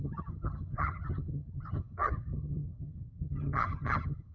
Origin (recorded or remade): remade